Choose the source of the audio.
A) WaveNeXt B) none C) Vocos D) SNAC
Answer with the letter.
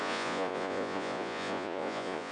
C